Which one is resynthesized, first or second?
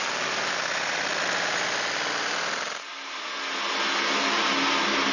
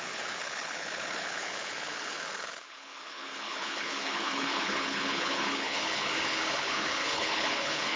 second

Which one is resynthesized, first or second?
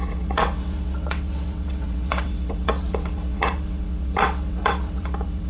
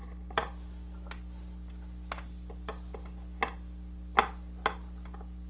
first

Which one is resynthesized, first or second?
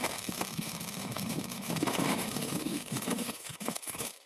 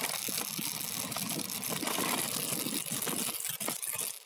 first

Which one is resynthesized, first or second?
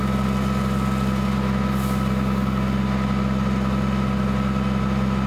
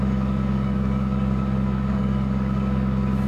second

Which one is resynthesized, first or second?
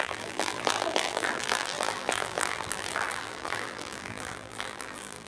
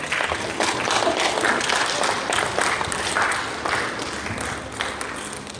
first